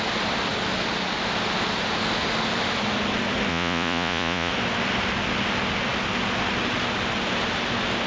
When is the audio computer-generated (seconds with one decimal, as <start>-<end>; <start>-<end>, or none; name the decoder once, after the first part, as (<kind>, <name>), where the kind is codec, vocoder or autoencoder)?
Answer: 3.5-4.5 (vocoder, Vocos)